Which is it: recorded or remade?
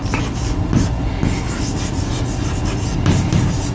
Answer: recorded